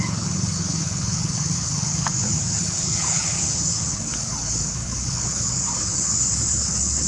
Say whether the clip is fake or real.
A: fake